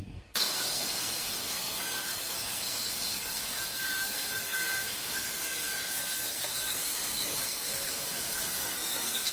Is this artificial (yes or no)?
yes